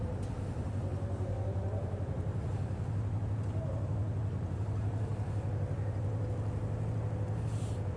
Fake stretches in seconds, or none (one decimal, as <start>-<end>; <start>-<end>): none